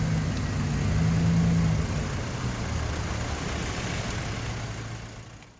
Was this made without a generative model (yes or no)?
yes